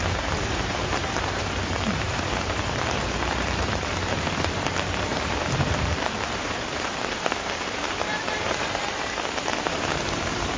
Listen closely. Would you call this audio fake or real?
fake